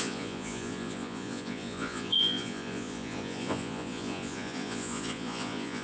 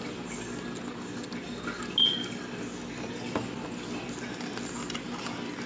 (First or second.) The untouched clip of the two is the second